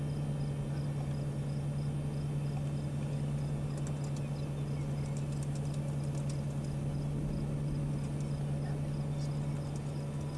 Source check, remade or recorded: recorded